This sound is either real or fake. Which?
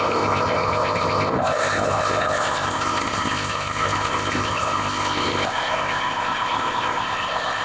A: fake